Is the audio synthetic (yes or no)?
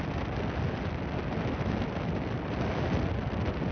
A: no